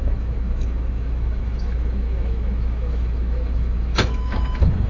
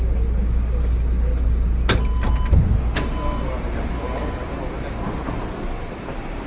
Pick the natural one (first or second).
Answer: second